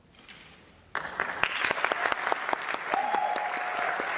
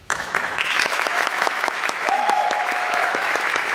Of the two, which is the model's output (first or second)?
second